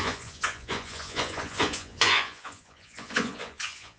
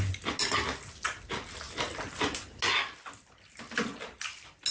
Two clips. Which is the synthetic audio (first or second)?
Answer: first